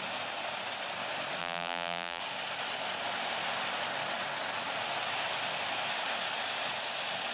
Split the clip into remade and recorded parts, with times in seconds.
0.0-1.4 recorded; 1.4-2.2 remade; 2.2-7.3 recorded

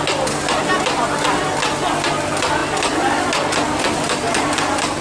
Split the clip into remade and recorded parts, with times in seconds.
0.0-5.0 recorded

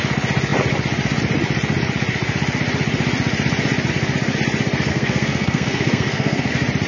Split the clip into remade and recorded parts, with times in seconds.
0.0-4.9 recorded; 4.9-6.5 remade; 6.5-6.9 recorded

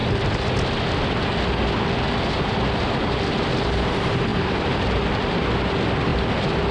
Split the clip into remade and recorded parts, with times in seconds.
0.0-6.1 recorded; 6.1-6.7 remade

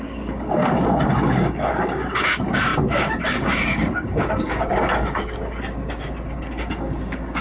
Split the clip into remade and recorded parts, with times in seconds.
0.0-7.4 remade

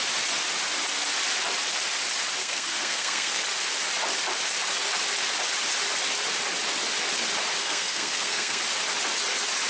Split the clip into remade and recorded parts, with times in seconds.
0.0-2.4 recorded; 2.4-3.4 remade; 3.4-7.6 recorded; 7.6-8.6 remade; 8.6-9.7 recorded

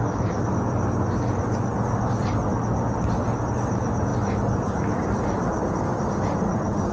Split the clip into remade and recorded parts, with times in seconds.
0.0-6.9 recorded

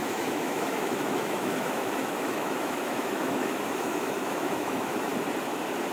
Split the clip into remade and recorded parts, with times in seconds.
0.0-5.1 remade; 5.1-5.9 recorded